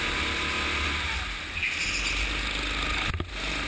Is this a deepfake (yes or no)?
no